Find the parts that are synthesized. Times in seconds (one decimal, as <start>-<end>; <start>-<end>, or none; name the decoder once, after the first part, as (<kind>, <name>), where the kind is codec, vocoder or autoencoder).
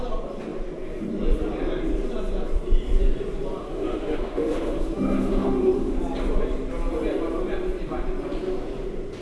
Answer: 3.6-6.0 (autoencoder, DAC-VAE)